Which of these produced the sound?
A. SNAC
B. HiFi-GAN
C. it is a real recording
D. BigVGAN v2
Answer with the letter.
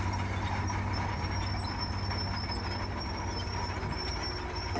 C